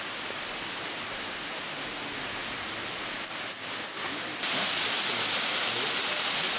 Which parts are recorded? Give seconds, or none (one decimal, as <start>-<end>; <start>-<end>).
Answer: 0.0-2.4; 4.4-6.6